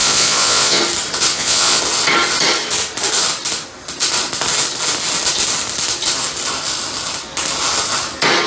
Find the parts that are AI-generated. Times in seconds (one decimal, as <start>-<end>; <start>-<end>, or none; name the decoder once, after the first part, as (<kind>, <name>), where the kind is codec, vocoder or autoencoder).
0.0-0.8 (vocoder, Vocos); 1.3-1.8